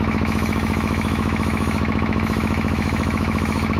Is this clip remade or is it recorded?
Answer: remade